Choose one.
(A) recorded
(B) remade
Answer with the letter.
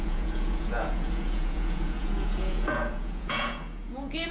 B